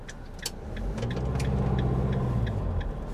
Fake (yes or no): no